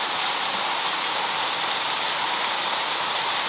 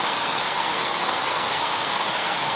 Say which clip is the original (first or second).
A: first